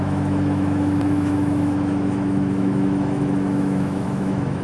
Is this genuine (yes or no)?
no